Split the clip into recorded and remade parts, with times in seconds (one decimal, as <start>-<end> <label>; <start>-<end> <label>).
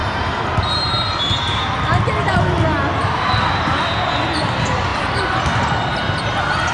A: 0.0-6.7 recorded